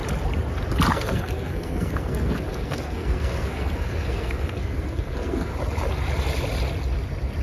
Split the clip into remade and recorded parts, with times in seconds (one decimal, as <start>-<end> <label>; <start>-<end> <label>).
0.0-0.9 recorded; 0.9-5.5 remade; 5.5-7.4 recorded